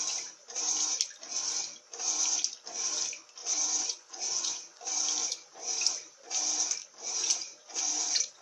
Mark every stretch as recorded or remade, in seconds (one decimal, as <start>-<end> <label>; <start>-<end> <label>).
0.0-3.4 recorded; 3.4-4.8 remade; 4.8-5.2 recorded; 5.2-5.7 remade; 5.7-7.5 recorded; 7.5-8.4 remade